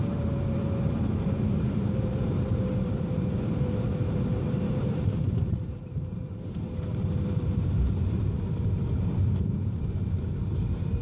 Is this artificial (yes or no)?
yes